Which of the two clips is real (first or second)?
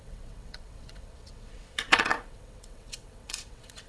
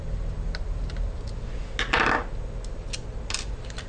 second